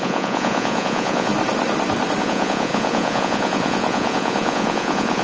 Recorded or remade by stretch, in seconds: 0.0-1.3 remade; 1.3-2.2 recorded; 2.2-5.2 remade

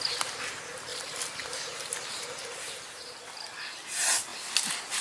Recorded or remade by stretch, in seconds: 0.0-0.9 recorded; 0.9-3.2 remade; 3.2-5.0 recorded

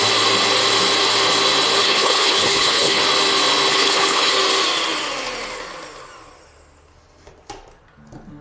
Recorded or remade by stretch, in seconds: 0.0-1.8 recorded; 1.8-3.0 remade; 3.0-3.7 recorded; 3.7-4.3 remade; 4.3-8.4 recorded

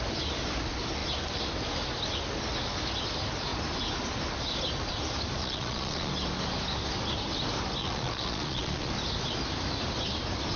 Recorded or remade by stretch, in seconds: 0.0-5.4 recorded; 5.4-6.1 remade; 6.1-7.8 recorded; 7.8-8.9 remade; 8.9-10.6 recorded

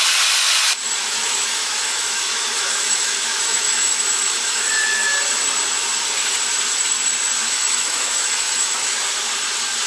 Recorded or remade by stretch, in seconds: 0.0-1.0 recorded; 1.0-5.1 remade; 5.1-7.4 recorded; 7.4-9.0 remade; 9.0-9.9 recorded

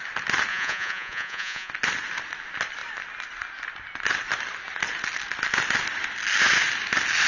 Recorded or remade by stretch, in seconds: 0.0-0.5 recorded; 0.5-1.7 remade; 1.7-7.3 recorded

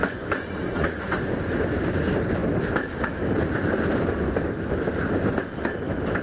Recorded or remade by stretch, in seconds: 0.0-1.4 remade; 1.4-6.2 recorded

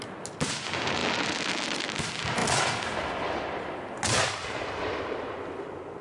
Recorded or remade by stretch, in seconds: 0.0-6.0 recorded